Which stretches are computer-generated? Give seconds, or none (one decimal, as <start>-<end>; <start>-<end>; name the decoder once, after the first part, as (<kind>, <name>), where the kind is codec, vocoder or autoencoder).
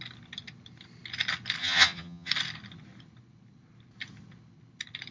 1.6-2.3 (vocoder, HiFi-GAN)